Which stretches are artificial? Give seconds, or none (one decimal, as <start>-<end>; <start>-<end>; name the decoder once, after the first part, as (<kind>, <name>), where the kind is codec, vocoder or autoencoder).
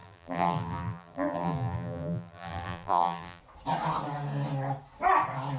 0.0-3.4 (vocoder, BigVGAN v2)